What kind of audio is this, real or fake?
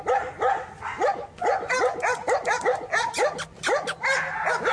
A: real